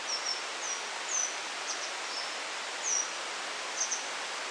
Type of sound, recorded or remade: recorded